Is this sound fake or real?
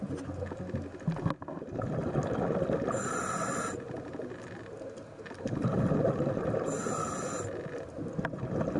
real